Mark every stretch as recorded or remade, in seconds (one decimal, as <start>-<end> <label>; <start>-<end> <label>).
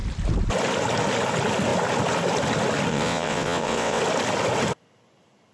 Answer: 0.0-2.9 recorded; 2.9-4.0 remade; 4.0-5.5 recorded